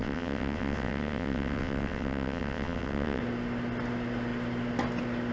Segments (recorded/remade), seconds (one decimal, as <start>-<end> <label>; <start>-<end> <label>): 0.0-3.2 remade; 3.2-5.3 recorded